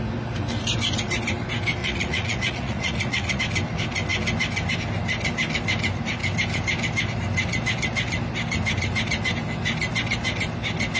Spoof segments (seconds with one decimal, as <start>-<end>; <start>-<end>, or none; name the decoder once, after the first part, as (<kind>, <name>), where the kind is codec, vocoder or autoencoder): 1.8-3.4 (vocoder, Vocos)